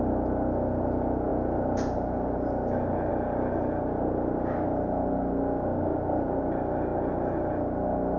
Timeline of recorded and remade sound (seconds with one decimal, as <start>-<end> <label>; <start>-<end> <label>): 0.0-8.2 recorded